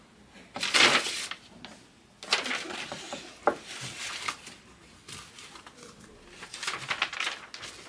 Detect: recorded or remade recorded